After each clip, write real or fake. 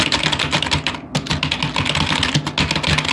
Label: real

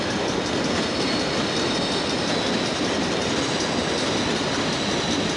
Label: real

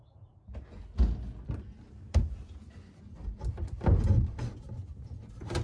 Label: real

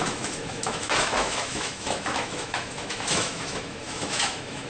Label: fake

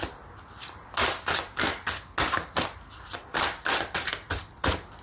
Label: real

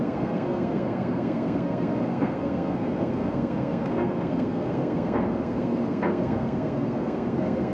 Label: fake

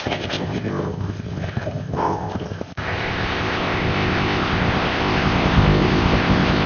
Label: fake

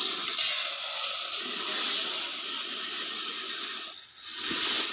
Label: real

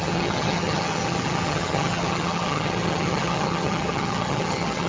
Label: fake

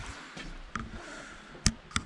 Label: real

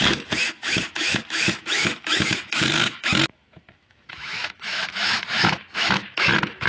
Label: fake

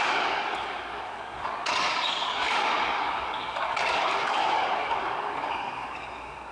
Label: fake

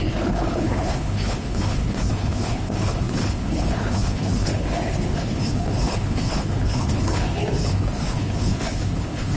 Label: fake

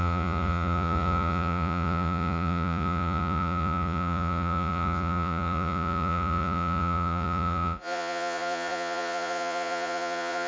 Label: fake